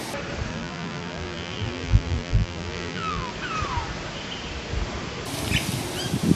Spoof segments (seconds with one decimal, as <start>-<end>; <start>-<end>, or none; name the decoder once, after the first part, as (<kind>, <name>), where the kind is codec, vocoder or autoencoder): 0.5-3.3 (vocoder, BigVGAN v2)